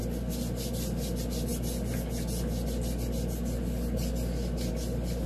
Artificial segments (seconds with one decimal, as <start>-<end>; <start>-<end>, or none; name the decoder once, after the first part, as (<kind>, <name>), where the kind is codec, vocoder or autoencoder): none

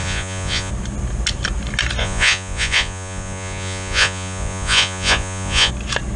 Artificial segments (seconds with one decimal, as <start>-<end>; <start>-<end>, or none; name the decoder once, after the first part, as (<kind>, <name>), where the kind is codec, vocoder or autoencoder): 0.0-0.7 (vocoder, Vocos); 2.0-5.7

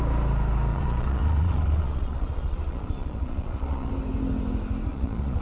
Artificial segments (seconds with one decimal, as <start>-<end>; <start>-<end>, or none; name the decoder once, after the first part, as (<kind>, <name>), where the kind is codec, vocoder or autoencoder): 0.7-3.9 (vocoder, Vocos); 4.9-5.4